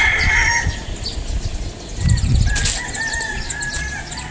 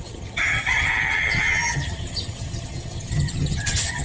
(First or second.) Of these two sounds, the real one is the first